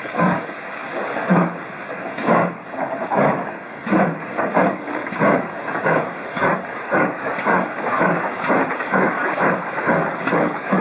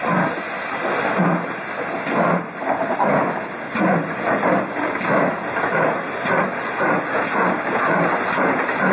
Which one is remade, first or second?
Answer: first